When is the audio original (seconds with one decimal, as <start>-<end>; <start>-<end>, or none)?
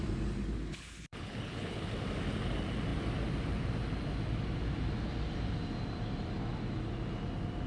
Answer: 0.0-0.7; 1.8-7.7